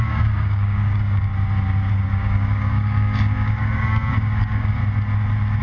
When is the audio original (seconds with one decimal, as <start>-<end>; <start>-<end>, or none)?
1.3-1.9; 4.8-5.6